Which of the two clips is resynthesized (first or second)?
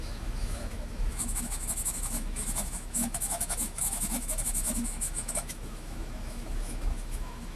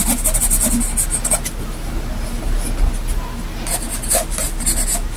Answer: first